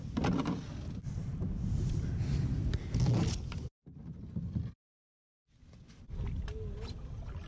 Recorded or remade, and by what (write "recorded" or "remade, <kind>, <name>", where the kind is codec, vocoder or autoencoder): recorded